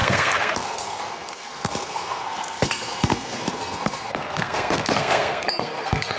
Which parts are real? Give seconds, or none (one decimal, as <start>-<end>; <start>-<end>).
none